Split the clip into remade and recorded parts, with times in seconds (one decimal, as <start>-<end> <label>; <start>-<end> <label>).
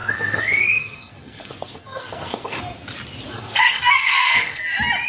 0.0-2.6 remade; 2.6-3.3 recorded; 3.3-4.6 remade; 4.6-5.1 recorded